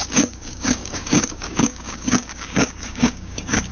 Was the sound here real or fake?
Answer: fake